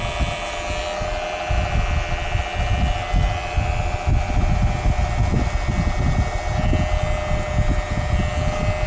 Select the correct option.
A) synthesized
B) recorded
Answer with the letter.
B